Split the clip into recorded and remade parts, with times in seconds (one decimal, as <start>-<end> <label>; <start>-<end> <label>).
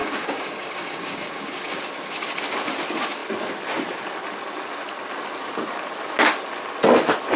0.0-1.8 remade; 1.8-7.4 recorded